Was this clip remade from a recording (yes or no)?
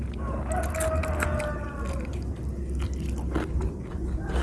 no